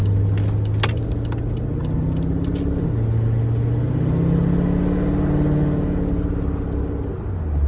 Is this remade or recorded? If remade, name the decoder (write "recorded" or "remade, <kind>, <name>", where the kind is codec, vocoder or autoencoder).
recorded